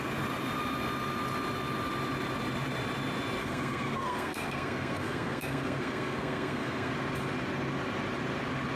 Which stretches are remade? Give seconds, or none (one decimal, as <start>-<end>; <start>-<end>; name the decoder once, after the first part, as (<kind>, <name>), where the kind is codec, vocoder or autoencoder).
3.4-6.9 (codec, SNAC)